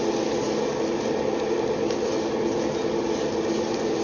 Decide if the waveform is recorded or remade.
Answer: recorded